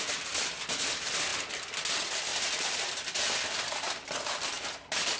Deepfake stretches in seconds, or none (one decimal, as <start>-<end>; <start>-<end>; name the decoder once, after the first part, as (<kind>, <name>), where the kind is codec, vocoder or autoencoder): 2.3-2.9 (vocoder, BigVGAN v2)